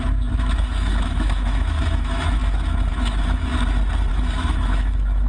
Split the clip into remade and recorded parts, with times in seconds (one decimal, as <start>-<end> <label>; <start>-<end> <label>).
0.0-3.5 remade; 3.5-4.1 recorded; 4.1-5.3 remade